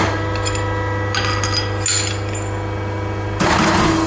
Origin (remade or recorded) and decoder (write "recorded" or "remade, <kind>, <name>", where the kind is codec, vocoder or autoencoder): recorded